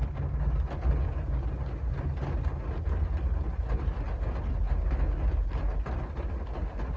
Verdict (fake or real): real